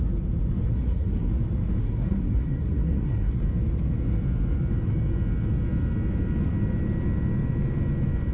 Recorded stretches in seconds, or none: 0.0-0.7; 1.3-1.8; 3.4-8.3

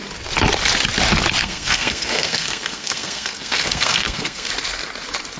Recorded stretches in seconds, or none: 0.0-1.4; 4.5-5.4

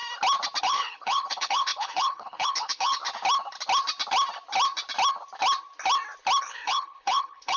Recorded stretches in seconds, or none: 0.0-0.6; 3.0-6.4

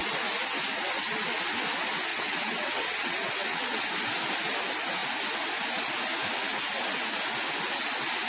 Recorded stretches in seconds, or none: 0.0-2.1; 3.9-8.3

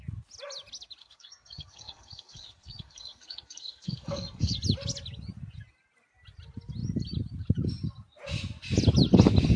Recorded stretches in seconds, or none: 0.0-1.0; 4.5-9.6

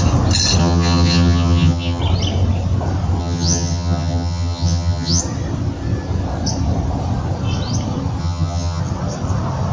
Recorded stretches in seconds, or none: 0.0-0.6; 2.0-3.2; 5.2-8.2; 8.8-9.7